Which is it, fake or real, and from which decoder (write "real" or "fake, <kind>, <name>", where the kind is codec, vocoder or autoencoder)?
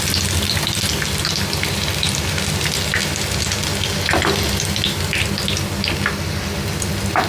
real